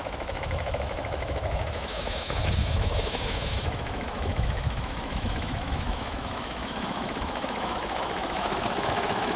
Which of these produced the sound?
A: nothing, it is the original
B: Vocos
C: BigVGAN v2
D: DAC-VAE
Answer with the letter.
D